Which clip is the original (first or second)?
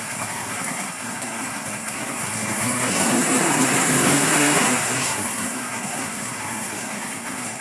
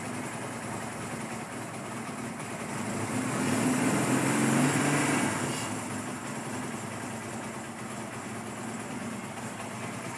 second